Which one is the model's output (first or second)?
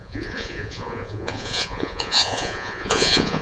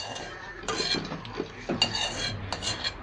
first